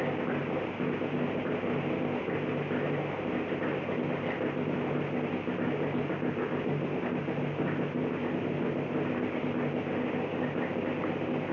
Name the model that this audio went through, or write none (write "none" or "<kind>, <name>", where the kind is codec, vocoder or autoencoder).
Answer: none